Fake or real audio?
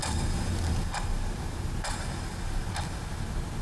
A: real